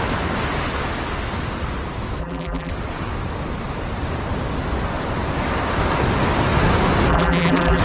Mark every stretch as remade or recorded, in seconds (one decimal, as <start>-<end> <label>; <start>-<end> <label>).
0.0-2.2 recorded; 2.2-2.7 remade; 2.7-7.1 recorded; 7.1-7.8 remade